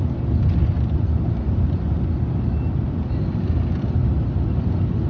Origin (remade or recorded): recorded